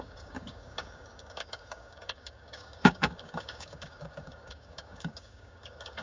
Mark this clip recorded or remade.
remade